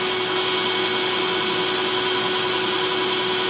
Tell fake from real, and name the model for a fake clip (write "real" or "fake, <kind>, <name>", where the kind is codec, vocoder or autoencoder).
real